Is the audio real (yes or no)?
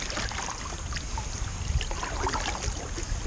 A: yes